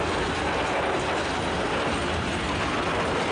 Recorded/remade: recorded